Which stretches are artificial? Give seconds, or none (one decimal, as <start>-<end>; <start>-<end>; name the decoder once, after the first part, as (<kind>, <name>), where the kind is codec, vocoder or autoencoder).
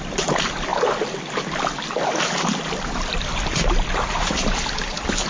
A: none